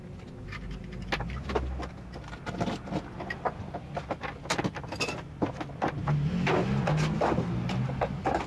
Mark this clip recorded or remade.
recorded